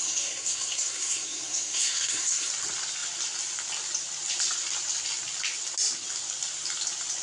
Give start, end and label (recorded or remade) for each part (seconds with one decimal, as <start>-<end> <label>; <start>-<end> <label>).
0.0-2.5 remade; 2.5-7.2 recorded